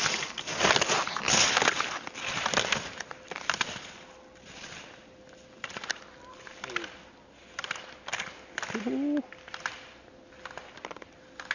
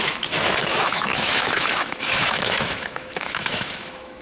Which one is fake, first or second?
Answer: second